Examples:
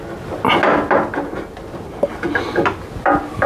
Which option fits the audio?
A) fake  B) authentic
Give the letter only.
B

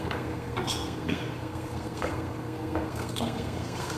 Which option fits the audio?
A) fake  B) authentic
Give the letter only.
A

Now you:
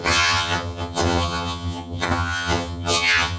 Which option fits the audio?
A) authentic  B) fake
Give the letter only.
B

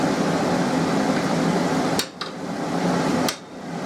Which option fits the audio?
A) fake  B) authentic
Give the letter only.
B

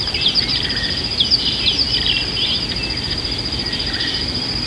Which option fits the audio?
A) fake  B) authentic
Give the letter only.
B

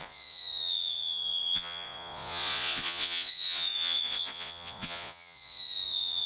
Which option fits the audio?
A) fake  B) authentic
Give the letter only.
A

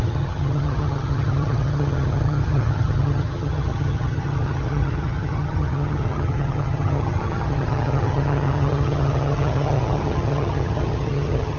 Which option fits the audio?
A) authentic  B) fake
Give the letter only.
B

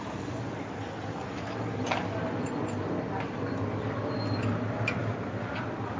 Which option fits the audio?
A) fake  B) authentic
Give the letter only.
B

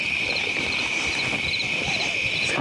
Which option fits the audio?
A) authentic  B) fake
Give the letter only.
A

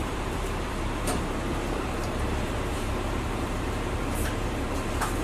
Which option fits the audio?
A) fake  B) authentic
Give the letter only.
A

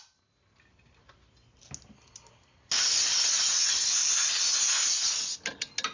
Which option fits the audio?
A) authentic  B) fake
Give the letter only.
A